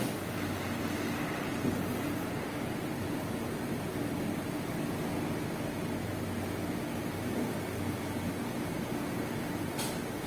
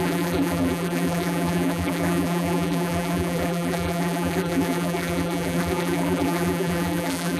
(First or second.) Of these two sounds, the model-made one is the second